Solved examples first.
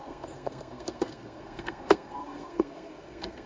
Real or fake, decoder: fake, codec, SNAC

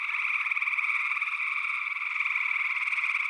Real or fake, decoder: real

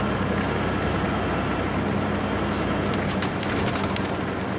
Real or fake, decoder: real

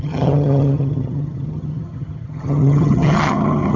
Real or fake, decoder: fake, vocoder, HiFi-GAN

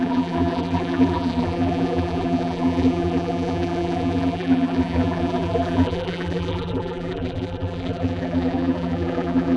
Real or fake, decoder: fake, vocoder, BigVGAN v2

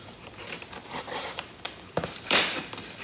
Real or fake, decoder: fake, vocoder, BigVGAN v2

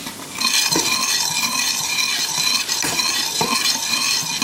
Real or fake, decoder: real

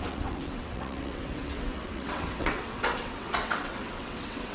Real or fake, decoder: fake, vocoder, WaveNeXt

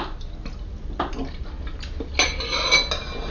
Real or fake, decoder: real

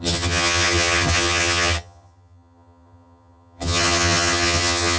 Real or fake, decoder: fake, vocoder, HiFi-GAN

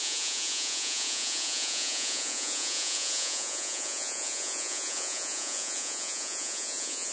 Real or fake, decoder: fake, vocoder, Vocos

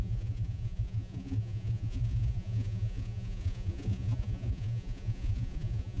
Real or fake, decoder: fake, vocoder, Vocos